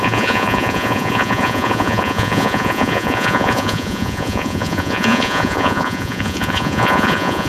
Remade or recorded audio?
remade